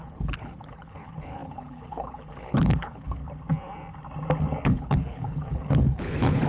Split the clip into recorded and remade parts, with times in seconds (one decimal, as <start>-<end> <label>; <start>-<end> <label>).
0.0-3.2 remade; 3.2-4.6 recorded; 4.6-6.5 remade